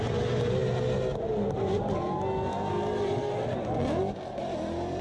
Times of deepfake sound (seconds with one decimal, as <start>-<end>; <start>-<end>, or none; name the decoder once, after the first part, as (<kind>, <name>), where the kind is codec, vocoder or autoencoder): none